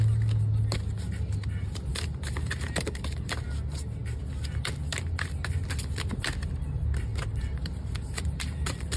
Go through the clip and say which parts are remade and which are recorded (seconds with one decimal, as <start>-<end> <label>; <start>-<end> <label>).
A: 0.0-1.9 recorded; 1.9-3.5 remade; 3.5-7.1 recorded; 7.1-9.0 remade